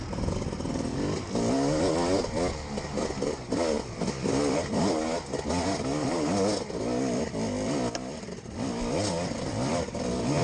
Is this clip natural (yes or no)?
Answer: yes